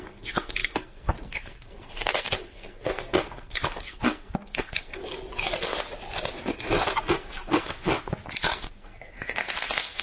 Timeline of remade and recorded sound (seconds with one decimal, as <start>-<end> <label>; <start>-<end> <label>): 0.0-5.0 remade; 5.0-7.0 recorded; 7.0-7.9 remade; 7.9-8.4 recorded; 8.4-10.0 remade